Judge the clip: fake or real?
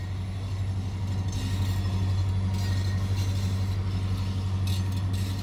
real